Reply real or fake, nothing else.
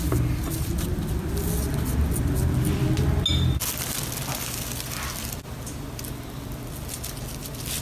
real